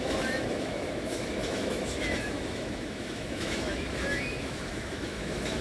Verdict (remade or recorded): remade